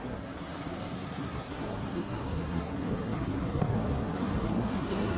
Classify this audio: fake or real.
fake